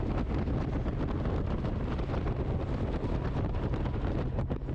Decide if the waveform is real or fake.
real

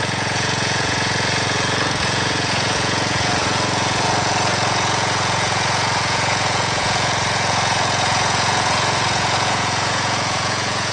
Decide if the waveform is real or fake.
fake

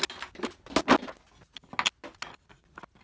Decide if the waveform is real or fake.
real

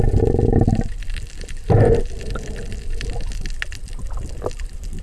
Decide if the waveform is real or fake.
real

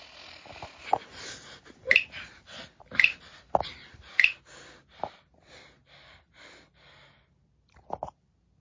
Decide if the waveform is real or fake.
real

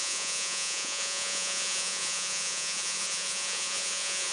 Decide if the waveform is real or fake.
fake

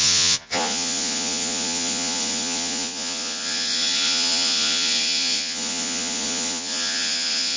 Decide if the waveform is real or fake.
fake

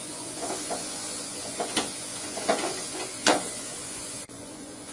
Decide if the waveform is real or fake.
fake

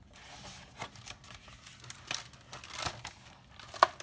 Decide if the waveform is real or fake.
real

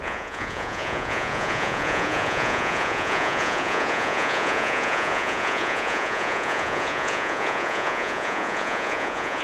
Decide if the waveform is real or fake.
fake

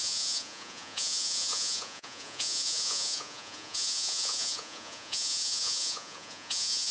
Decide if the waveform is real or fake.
fake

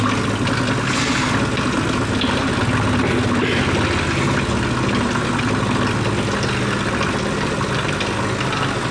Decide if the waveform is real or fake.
real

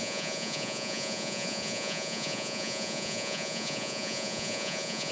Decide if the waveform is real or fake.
fake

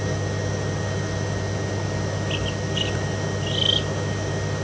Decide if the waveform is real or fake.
real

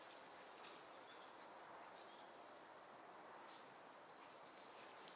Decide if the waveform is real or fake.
real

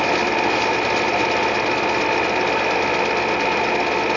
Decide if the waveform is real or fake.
real